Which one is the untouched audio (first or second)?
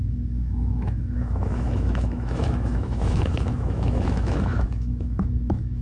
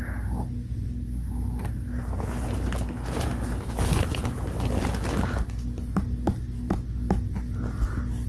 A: second